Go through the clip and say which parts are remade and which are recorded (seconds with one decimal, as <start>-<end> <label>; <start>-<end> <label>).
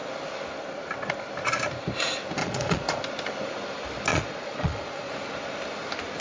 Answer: 0.0-2.4 recorded; 2.4-3.0 remade; 3.0-4.1 recorded; 4.1-5.1 remade; 5.1-6.2 recorded